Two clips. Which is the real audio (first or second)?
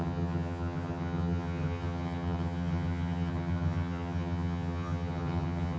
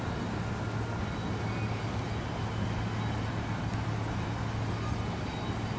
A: second